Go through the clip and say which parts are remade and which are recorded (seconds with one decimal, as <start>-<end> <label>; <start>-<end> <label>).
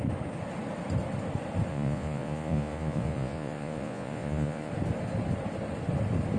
0.0-1.7 recorded; 1.7-4.7 remade; 4.7-6.4 recorded